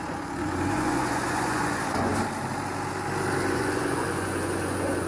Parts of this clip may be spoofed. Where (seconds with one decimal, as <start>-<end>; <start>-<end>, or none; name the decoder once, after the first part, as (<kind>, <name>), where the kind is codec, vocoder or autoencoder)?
0.0-2.1 (vocoder, Vocos); 3.5-5.1